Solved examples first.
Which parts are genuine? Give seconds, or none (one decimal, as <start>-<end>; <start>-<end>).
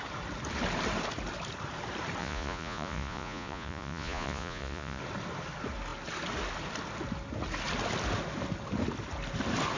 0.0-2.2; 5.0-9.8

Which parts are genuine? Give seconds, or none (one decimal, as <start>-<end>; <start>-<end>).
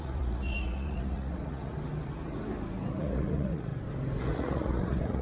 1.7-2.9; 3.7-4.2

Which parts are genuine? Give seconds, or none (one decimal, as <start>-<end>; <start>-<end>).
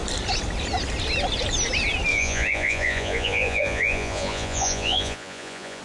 0.0-2.1